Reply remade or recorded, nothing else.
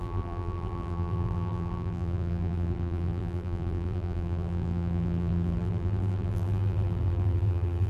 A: remade